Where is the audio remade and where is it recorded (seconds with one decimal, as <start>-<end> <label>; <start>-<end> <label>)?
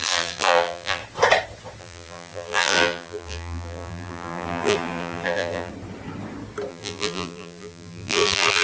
0.0-1.0 remade; 1.0-1.8 recorded; 1.8-5.7 remade; 5.7-6.7 recorded; 6.7-8.6 remade